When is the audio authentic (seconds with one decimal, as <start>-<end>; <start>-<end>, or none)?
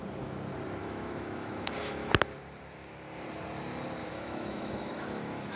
0.0-0.8; 2.1-4.1